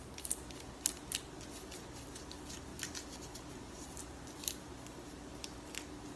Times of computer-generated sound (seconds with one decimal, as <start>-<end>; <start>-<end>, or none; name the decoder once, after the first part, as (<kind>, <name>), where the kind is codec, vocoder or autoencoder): none